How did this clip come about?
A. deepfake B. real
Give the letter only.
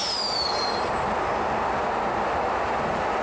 B